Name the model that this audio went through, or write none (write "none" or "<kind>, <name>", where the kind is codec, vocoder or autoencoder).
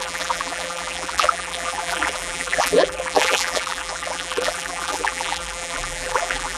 vocoder, BigVGAN v2